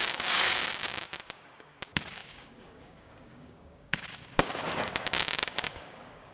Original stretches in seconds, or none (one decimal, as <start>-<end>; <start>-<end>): none